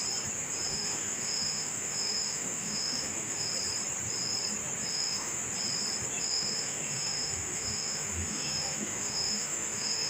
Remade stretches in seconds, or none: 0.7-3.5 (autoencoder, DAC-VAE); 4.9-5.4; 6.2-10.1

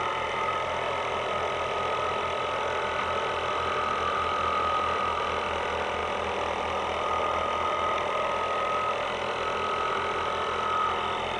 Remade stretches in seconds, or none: none

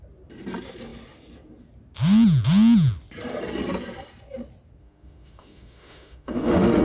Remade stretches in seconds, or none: 4.8-6.8 (autoencoder, DAC-VAE)

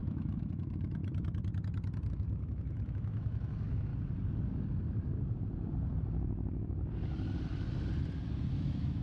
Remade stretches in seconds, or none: 0.0-1.0 (autoencoder, DAC-VAE); 2.1-3.9; 8.5-9.0

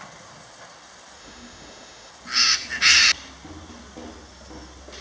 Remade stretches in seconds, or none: 1.2-2.1 (autoencoder, DAC-VAE)